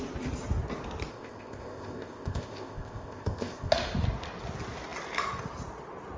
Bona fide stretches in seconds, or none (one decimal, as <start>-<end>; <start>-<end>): 0.0-1.1; 3.7-6.2